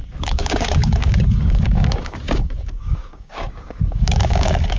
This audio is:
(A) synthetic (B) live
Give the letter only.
A